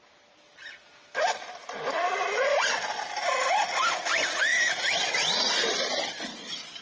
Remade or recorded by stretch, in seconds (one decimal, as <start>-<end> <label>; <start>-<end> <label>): 0.0-6.8 recorded